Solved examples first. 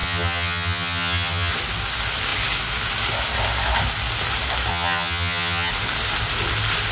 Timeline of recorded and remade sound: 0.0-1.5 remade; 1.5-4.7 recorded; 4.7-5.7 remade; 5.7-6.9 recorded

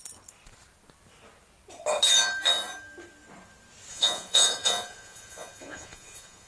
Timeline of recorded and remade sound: 0.0-3.9 recorded; 3.9-6.5 remade

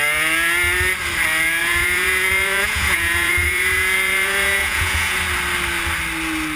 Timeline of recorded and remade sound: 0.0-1.6 recorded; 1.6-5.2 remade; 5.2-6.6 recorded